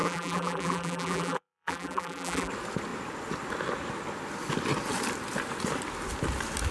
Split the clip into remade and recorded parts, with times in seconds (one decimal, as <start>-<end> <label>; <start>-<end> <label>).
0.0-2.5 remade; 2.5-6.7 recorded